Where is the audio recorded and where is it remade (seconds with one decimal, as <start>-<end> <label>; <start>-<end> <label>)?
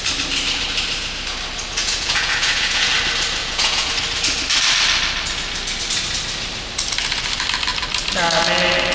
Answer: 0.0-1.8 recorded; 1.8-2.9 remade; 2.9-3.4 recorded; 3.4-3.9 remade; 3.9-8.9 recorded